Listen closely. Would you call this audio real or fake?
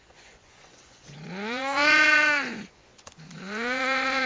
fake